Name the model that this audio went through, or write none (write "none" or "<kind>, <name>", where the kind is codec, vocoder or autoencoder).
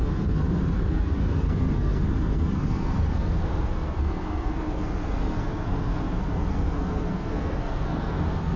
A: codec, SNAC